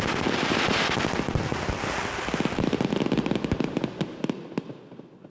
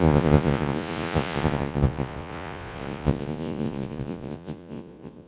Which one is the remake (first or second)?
second